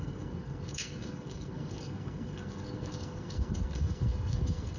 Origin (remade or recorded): remade